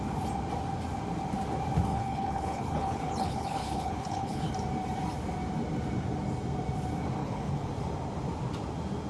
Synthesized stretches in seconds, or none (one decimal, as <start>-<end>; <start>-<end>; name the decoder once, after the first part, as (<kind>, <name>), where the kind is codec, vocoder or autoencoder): 1.9-4.5 (codec, HILCodec); 7.2-7.7